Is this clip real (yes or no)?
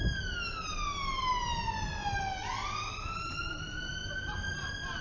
yes